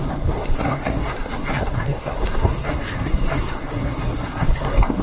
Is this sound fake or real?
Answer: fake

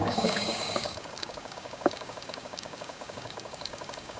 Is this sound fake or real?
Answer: fake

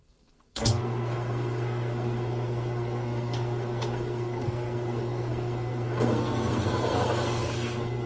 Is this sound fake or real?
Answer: fake